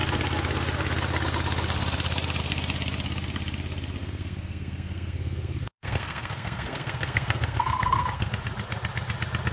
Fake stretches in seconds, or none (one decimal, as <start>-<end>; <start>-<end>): 4.0-8.3